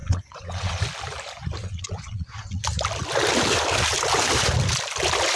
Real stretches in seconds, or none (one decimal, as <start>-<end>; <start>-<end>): 0.8-1.6; 2.6-5.4